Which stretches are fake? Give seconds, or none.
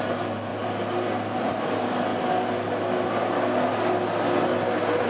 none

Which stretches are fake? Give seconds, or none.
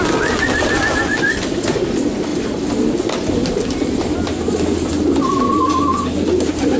none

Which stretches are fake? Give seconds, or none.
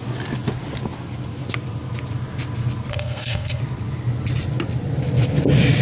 2.9-3.6 (codec, SNAC)